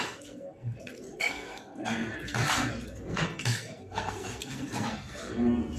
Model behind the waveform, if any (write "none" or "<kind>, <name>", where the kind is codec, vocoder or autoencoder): codec, SNAC